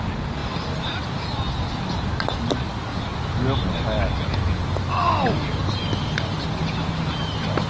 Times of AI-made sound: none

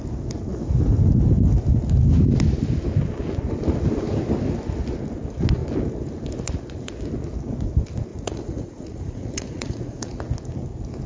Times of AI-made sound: 8.1-10.2

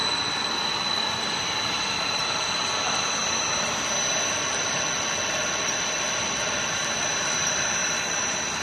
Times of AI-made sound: none

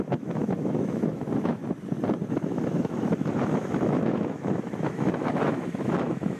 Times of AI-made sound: 0.0-1.6; 2.3-6.4

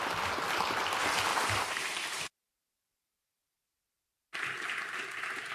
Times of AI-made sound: 1.3-4.4